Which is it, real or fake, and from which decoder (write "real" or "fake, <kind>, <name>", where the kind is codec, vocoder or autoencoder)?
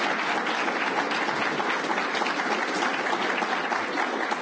real